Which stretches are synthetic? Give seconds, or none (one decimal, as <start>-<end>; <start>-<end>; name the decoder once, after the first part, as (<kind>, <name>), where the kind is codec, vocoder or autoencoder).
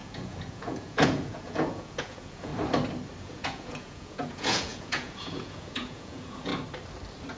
0.0-2.5 (vocoder, Vocos); 3.2-6.5